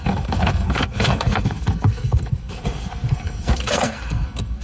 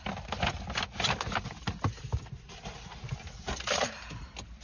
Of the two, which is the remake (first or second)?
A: first